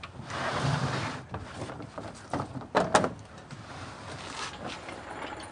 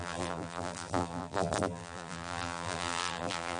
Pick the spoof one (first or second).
second